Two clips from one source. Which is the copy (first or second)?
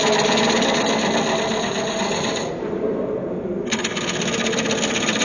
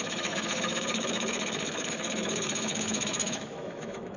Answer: second